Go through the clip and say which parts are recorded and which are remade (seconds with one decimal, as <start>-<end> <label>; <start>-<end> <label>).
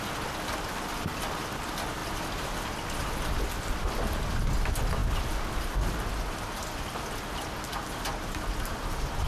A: 0.0-9.3 recorded